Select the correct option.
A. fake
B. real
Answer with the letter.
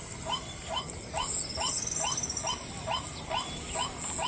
B